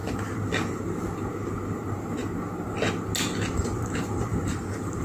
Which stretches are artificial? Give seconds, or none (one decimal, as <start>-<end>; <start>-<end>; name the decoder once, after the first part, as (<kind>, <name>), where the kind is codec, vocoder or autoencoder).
1.5-2.2 (vocoder, BigVGAN v2); 3.5-5.0